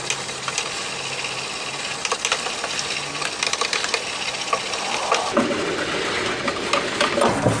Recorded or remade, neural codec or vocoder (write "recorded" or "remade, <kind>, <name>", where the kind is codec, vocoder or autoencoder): recorded